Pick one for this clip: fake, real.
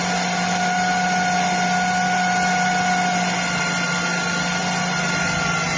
real